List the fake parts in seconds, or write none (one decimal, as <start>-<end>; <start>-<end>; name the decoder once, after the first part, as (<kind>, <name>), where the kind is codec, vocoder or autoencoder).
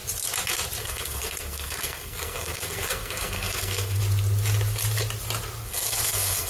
0.8-4.0 (codec, SNAC); 5.6-6.5